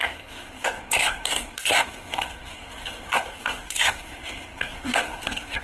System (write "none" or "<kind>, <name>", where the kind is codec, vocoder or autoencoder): codec, SNAC